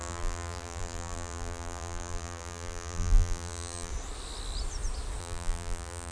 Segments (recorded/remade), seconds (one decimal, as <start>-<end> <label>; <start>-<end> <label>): 0.0-3.9 remade; 3.9-5.2 recorded; 5.2-6.1 remade